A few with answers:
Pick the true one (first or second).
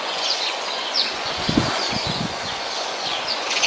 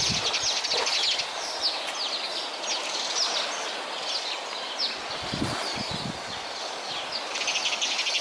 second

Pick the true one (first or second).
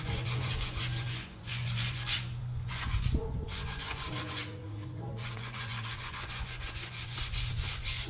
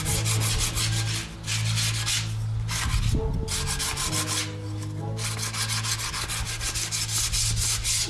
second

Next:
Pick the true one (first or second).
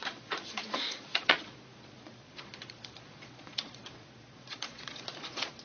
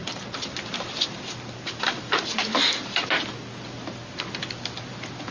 second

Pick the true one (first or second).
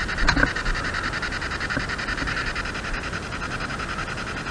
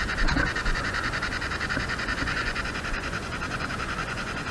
first